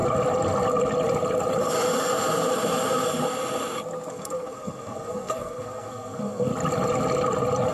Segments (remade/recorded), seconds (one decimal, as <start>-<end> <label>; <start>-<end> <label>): 0.0-4.1 recorded; 4.1-6.5 remade; 6.5-7.7 recorded